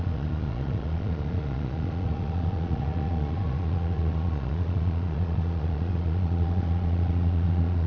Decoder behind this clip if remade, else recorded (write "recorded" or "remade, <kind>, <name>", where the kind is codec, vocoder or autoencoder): remade, vocoder, Vocos